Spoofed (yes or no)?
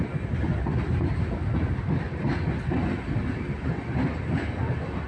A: no